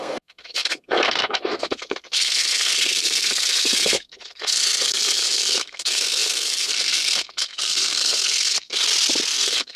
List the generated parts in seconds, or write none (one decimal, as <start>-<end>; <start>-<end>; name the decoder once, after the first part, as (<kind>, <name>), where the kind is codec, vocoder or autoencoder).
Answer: 0.0-8.8 (codec, SNAC); 9.3-9.8